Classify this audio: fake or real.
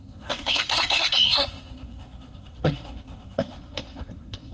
fake